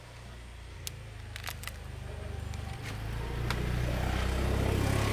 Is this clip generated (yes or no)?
no